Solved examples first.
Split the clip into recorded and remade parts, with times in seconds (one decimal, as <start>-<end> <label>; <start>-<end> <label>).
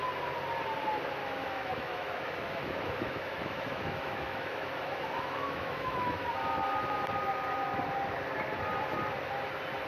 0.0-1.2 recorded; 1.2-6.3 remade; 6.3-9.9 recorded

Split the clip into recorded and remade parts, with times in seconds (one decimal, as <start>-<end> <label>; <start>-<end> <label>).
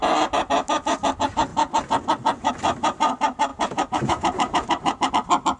0.0-3.5 recorded; 3.5-5.1 remade; 5.1-5.6 recorded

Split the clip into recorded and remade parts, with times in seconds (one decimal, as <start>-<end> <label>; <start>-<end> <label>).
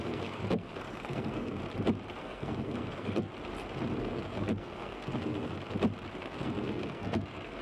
0.0-1.6 remade; 1.6-2.2 recorded; 2.2-3.3 remade; 3.3-4.0 recorded; 4.0-5.5 remade; 5.5-6.2 recorded; 6.2-7.6 remade